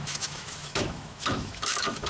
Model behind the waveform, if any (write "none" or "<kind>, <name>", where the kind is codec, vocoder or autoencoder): autoencoder, DAC-VAE